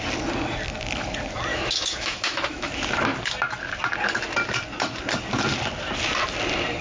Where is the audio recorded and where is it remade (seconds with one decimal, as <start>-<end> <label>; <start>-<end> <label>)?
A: 0.0-1.5 recorded; 1.5-2.7 remade; 2.7-6.8 recorded